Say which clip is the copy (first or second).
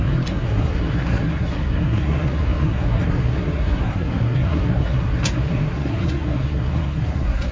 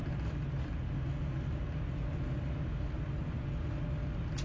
first